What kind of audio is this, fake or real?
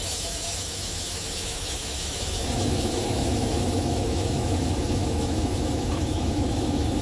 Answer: fake